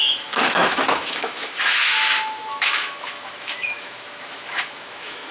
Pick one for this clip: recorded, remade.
remade